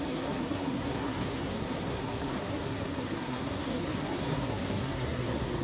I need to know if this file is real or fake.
fake